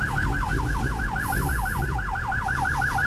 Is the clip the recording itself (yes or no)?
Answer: yes